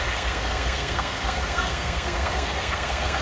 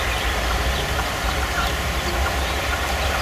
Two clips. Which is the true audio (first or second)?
second